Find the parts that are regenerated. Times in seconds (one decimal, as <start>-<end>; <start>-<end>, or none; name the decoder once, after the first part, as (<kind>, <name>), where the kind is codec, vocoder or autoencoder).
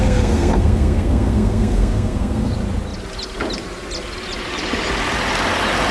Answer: 0.0-2.5 (codec, SNAC)